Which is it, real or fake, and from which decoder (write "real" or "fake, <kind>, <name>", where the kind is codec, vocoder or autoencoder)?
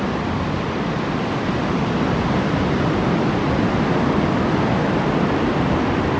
real